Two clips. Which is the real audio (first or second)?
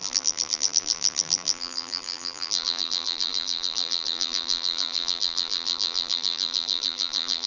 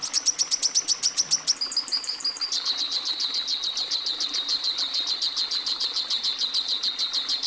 second